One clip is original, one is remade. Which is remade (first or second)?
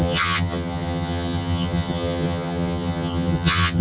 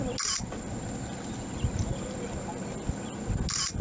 first